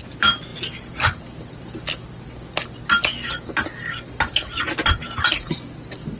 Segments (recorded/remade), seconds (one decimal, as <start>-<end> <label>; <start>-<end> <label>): 0.0-6.2 recorded